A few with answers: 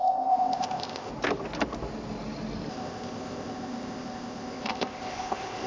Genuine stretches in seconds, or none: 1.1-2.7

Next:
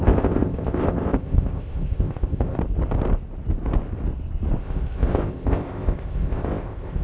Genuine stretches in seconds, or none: 2.6-4.6

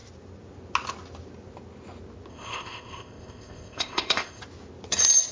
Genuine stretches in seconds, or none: 0.0-2.3; 4.4-5.3

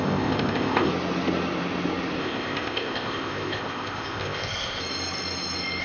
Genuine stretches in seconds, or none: 0.9-2.2; 4.8-5.8

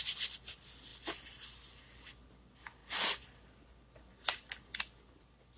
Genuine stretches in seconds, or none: 0.0-5.6

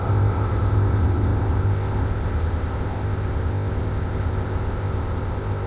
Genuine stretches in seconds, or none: none